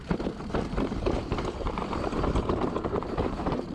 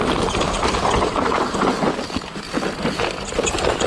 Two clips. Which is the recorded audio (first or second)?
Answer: second